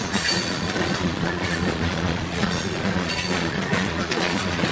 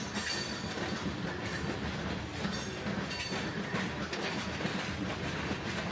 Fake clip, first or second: first